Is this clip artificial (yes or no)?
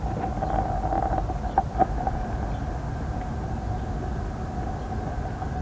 no